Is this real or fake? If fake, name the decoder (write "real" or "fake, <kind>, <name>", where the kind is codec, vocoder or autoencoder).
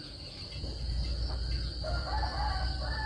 real